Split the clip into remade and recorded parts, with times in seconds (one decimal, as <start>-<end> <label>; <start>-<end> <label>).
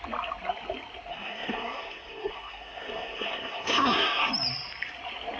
0.0-1.1 recorded; 1.1-4.3 remade; 4.3-5.4 recorded